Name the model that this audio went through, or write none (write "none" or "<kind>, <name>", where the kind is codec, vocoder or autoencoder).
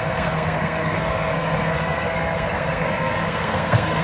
codec, SNAC